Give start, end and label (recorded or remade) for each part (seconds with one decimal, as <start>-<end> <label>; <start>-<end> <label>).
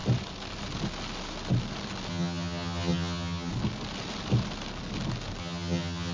0.0-2.1 recorded; 2.1-3.5 remade; 3.5-5.4 recorded; 5.4-6.1 remade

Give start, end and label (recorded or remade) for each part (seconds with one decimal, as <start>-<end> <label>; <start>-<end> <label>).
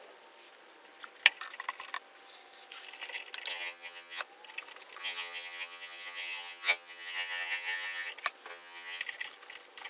0.0-3.5 recorded; 3.5-4.2 remade; 4.2-5.0 recorded; 5.0-8.1 remade; 8.1-8.5 recorded; 8.5-9.0 remade; 9.0-9.9 recorded